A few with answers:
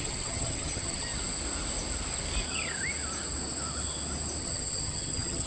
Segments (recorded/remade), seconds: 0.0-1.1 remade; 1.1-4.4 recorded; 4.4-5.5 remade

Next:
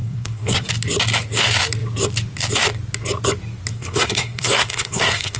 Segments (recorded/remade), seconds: 0.0-0.7 remade; 0.7-3.7 recorded; 3.7-5.4 remade

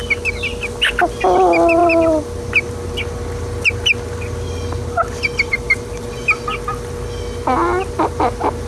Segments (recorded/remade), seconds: 0.0-8.7 recorded

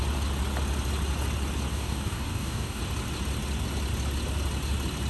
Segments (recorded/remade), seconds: 0.0-1.7 recorded; 1.7-2.8 remade; 2.8-5.1 recorded